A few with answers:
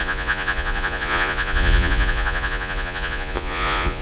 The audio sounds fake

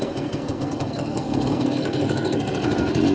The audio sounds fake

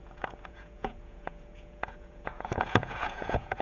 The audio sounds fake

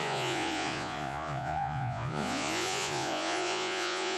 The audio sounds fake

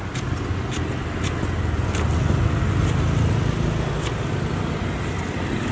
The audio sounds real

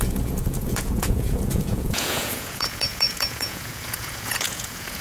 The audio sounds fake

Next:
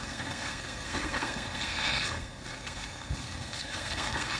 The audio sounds fake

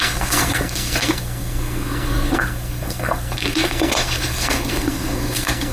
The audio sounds fake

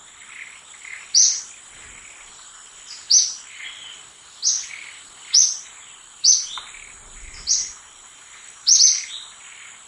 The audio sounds real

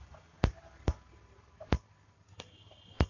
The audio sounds real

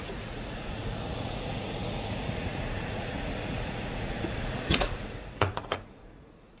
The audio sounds fake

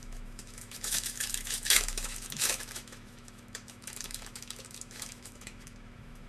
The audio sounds fake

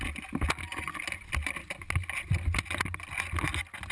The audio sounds real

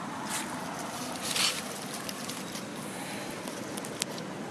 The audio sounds real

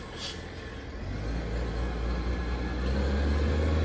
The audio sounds real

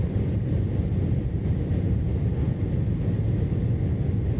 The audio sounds real